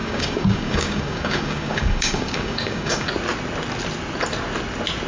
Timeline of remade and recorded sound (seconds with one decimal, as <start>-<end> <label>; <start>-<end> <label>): 0.0-3.1 remade; 3.1-5.1 recorded

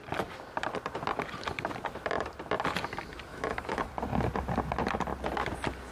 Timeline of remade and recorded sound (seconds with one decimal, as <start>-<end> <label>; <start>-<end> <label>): 0.0-3.3 recorded; 3.3-3.9 remade; 3.9-5.9 recorded

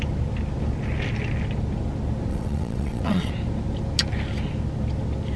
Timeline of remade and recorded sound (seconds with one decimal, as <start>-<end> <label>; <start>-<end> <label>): 0.0-2.3 recorded; 2.3-3.3 remade; 3.3-5.4 recorded

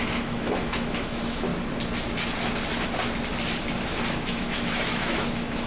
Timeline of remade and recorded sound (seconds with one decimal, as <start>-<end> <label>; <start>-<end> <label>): 0.0-1.5 remade; 1.5-4.1 recorded; 4.1-5.7 remade

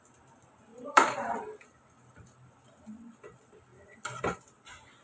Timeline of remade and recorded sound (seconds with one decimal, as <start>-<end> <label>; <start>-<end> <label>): 0.0-0.7 recorded; 0.7-1.6 remade; 1.6-3.7 recorded; 3.7-4.2 remade; 4.2-5.0 recorded